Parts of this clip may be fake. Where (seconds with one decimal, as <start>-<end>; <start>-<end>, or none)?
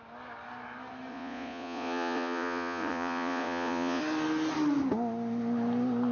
1.1-4.0